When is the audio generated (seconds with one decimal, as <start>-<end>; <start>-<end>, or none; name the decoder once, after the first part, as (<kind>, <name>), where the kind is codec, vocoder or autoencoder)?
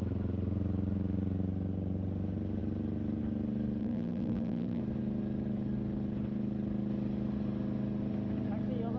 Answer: 3.8-4.8 (vocoder, BigVGAN v2)